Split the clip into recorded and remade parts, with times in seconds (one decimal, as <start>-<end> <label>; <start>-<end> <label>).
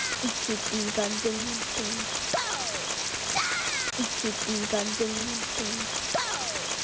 0.0-6.8 recorded